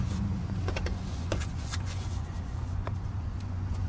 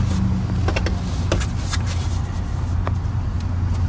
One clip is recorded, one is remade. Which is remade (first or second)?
first